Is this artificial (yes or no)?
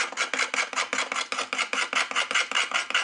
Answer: no